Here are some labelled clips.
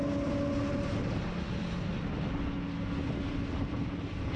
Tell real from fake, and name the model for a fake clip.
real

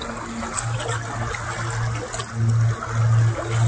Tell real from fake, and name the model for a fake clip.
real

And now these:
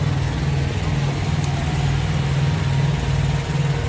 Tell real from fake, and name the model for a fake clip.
real